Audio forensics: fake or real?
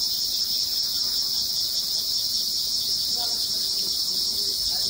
real